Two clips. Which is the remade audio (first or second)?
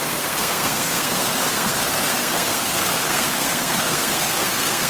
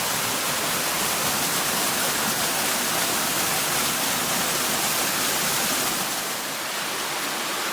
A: first